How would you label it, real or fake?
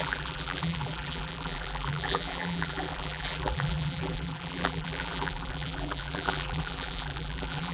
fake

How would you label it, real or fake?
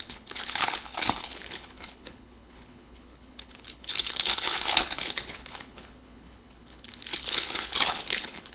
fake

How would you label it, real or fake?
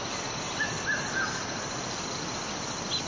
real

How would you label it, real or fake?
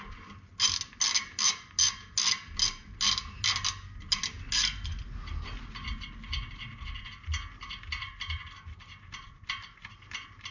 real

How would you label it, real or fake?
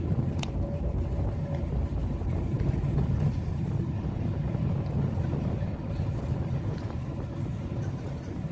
real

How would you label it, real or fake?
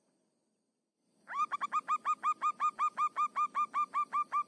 real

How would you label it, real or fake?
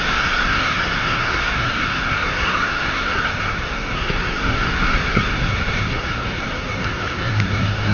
fake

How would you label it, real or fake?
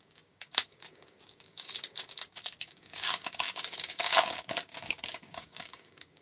fake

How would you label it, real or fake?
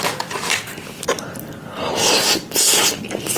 real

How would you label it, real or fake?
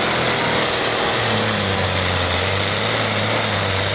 real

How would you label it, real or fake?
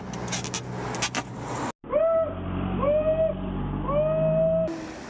real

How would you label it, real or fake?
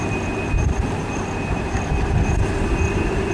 fake